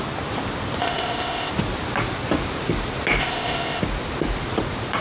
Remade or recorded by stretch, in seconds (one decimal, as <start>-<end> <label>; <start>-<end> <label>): 0.0-0.8 recorded; 0.8-1.5 remade; 1.5-3.2 recorded; 3.2-3.8 remade; 3.8-5.0 recorded